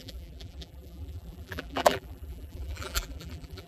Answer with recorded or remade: remade